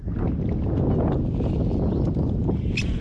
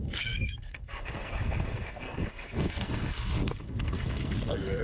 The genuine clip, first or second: first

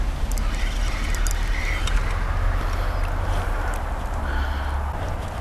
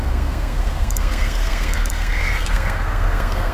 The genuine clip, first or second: first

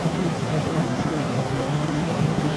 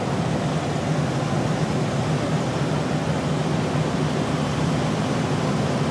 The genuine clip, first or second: second